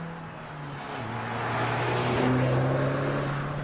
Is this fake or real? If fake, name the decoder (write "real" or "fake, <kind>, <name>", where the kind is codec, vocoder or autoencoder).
real